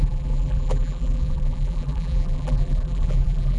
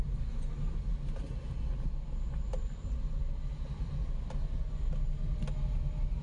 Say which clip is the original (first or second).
second